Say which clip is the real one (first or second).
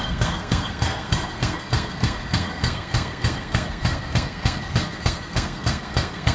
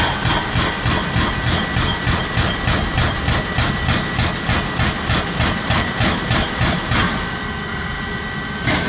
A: second